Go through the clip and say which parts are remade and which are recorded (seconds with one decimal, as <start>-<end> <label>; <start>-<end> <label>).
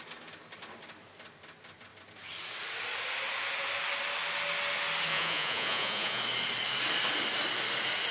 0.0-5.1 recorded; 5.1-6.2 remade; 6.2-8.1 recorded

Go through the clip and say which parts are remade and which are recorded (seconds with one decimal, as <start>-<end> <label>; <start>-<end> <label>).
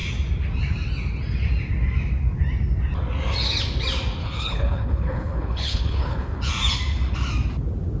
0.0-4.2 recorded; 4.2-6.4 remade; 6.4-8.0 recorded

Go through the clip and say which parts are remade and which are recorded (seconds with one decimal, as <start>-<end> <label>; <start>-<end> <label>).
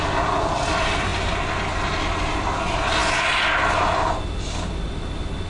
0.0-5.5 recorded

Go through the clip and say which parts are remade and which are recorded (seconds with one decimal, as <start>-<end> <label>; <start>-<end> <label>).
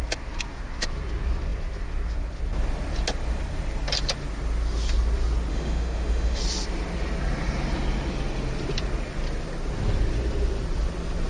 0.0-5.5 recorded; 5.5-6.4 remade; 6.4-11.3 recorded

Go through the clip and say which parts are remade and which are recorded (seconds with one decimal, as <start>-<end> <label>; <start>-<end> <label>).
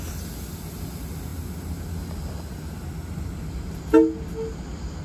0.0-5.0 recorded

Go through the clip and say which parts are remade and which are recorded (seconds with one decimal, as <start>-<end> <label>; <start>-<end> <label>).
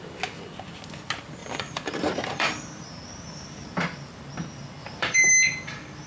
0.0-1.4 recorded; 1.4-3.2 remade; 3.2-4.8 recorded; 4.8-5.3 remade; 5.3-6.1 recorded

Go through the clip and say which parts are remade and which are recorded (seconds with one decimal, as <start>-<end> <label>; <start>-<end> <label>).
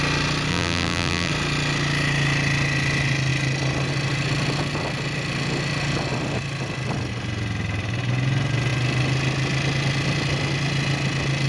0.0-0.5 recorded; 0.5-1.3 remade; 1.3-11.5 recorded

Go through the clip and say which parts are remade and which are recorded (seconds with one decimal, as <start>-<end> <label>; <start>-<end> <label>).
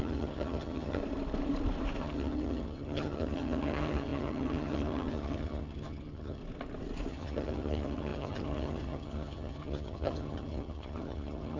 0.0-1.0 remade; 1.0-2.0 recorded; 2.0-6.4 remade; 6.4-7.1 recorded; 7.1-11.6 remade